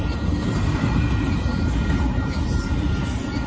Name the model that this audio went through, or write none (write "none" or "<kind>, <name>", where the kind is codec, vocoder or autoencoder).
vocoder, BigVGAN v2